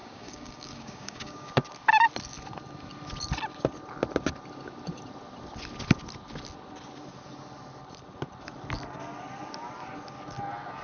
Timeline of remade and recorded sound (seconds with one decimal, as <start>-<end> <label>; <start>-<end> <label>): 0.0-1.5 remade; 1.5-10.8 recorded